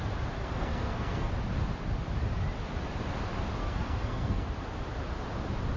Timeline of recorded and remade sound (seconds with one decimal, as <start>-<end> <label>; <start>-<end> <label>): 0.0-0.4 recorded; 0.4-1.3 remade; 1.3-3.6 recorded; 3.6-4.5 remade; 4.5-5.8 recorded